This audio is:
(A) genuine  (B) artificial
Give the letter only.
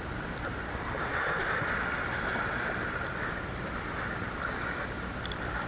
A